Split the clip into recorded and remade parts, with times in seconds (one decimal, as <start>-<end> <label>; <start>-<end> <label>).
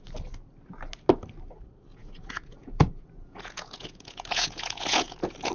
0.0-1.9 recorded; 1.9-5.5 remade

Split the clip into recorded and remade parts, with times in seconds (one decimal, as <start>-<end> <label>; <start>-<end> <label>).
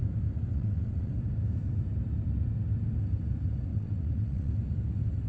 0.0-0.5 recorded; 0.5-1.1 remade; 1.1-3.7 recorded; 3.7-4.5 remade; 4.5-5.3 recorded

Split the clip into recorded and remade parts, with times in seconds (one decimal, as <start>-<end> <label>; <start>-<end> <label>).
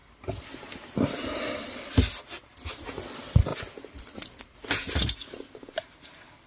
0.0-6.5 recorded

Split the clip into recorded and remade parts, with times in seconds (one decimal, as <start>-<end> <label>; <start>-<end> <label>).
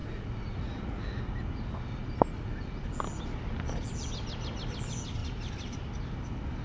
0.0-1.2 remade; 1.2-6.6 recorded